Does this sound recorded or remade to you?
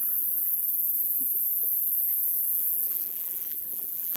remade